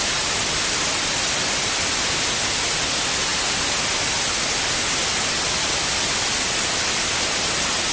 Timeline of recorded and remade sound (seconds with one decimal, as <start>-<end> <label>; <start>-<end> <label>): 0.0-7.9 recorded